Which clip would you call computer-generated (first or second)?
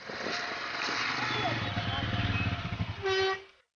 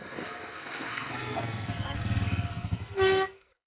second